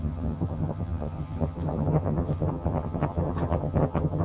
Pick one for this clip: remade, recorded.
remade